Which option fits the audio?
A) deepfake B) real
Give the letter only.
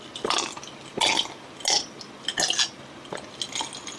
B